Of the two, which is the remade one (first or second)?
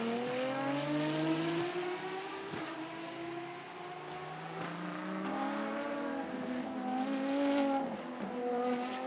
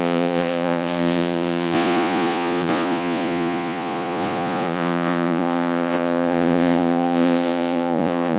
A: second